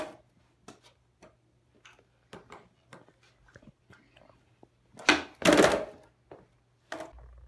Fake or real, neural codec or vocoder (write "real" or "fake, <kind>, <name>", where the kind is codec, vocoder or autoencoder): real